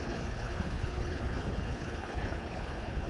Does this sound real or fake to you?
fake